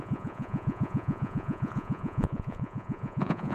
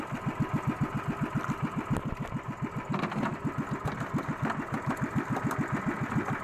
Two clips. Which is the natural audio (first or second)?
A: second